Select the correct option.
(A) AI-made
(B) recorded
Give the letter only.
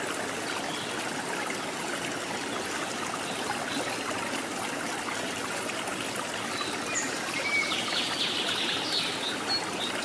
B